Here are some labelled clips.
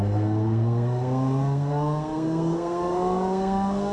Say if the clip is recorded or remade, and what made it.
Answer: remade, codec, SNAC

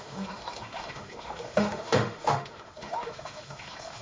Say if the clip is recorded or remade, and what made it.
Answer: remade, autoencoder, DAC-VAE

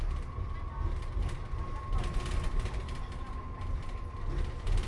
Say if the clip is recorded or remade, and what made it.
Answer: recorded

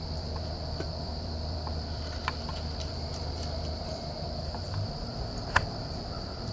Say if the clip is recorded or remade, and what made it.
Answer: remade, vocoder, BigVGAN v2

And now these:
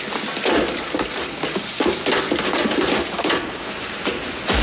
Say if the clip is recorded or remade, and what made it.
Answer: recorded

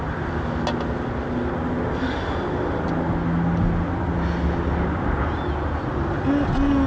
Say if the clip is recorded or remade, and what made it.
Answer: recorded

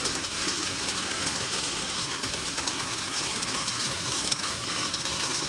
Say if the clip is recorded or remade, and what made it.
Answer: remade, codec, SNAC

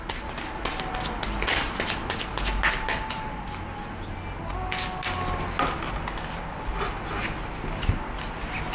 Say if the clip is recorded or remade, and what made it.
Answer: recorded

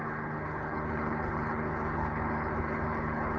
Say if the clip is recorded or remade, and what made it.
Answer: remade, codec, HILCodec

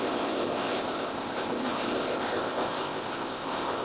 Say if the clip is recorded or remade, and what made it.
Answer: remade, codec, ZipCodec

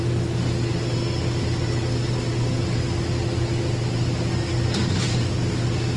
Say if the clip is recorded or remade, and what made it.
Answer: recorded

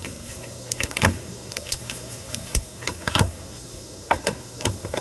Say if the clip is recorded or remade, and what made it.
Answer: remade, codec, SNAC